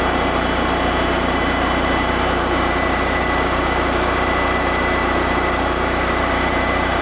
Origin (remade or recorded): remade